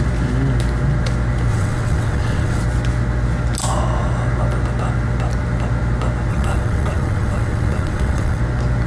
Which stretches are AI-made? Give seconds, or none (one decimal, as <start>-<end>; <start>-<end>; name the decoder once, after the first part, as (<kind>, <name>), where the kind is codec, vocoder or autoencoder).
1.5-2.6 (vocoder, WaveNeXt); 6.3-8.4